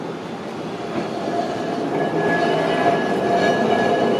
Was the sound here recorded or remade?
recorded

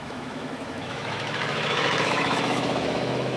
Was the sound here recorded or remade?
remade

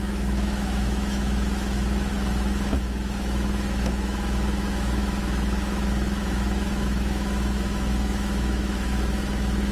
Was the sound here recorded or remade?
remade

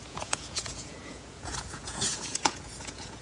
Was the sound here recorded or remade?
remade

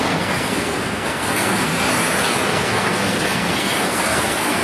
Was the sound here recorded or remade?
remade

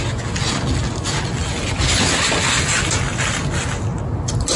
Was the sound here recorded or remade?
recorded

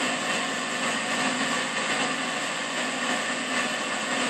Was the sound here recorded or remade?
remade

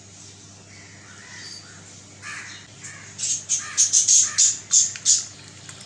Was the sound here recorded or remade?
recorded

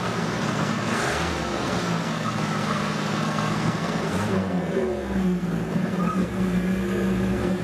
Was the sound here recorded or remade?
remade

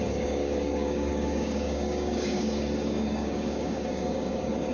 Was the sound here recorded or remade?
remade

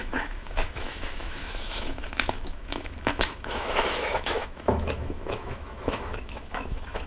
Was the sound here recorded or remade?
remade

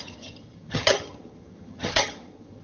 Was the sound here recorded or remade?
remade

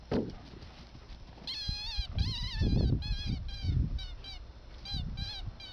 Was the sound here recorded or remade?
recorded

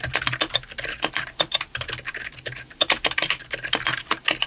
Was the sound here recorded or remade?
recorded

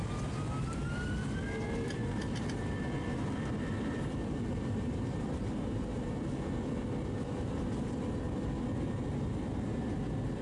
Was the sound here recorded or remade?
remade